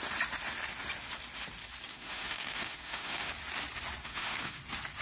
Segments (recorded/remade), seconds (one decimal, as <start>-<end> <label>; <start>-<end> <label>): 0.0-1.9 recorded; 1.9-3.3 remade; 3.3-4.0 recorded; 4.0-4.6 remade; 4.6-5.0 recorded